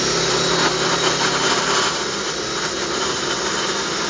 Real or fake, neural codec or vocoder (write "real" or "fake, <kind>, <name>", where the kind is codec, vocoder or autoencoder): real